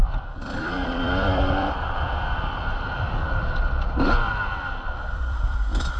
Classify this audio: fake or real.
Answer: fake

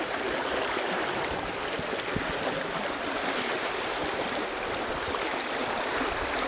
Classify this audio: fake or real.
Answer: real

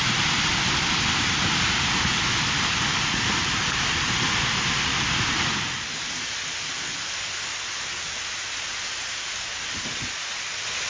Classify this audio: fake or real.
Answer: real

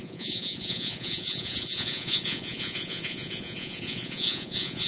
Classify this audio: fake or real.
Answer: fake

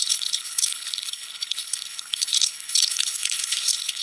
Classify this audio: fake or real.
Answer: fake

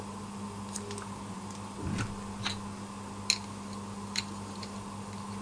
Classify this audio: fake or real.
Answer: real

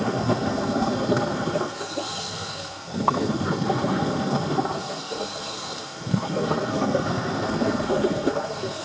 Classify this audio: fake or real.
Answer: fake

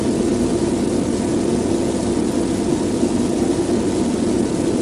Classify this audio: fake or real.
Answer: real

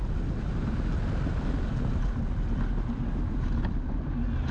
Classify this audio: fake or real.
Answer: real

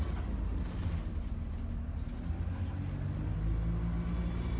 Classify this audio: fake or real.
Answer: real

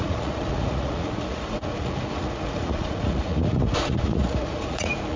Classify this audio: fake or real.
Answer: fake